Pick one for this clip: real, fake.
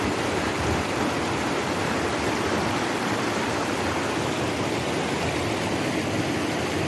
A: real